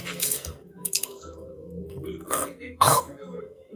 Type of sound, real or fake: fake